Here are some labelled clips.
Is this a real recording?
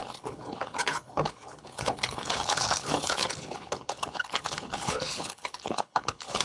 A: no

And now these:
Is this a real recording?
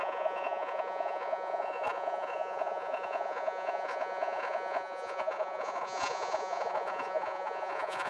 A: no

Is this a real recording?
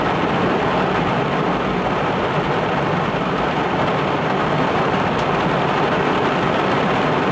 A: yes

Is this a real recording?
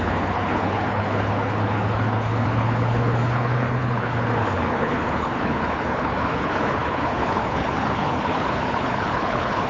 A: no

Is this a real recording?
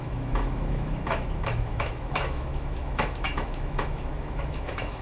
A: no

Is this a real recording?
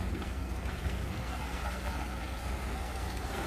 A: no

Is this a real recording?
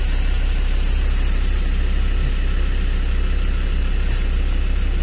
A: yes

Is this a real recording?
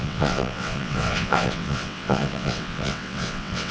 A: no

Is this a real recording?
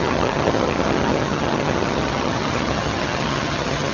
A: no